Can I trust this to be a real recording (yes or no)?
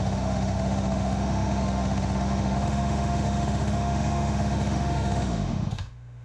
no